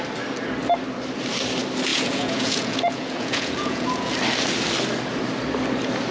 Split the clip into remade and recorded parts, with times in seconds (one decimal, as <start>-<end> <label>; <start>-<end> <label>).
0.0-1.9 recorded; 1.9-4.1 remade; 4.1-6.1 recorded